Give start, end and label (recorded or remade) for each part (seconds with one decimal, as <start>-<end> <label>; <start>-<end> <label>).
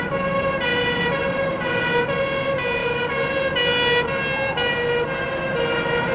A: 0.0-2.8 recorded; 2.8-3.3 remade; 3.3-6.1 recorded